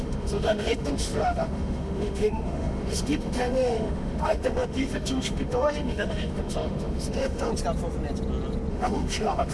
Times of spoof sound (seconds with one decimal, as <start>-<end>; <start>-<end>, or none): 0.0-7.5; 8.7-9.5